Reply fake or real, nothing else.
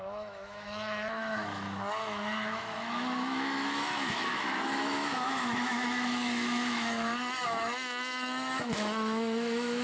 fake